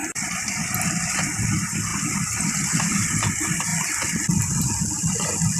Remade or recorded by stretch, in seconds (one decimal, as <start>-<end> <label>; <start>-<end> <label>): 0.0-0.6 remade; 0.6-5.6 recorded